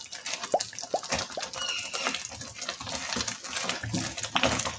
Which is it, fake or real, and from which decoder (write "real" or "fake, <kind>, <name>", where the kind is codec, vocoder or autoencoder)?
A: real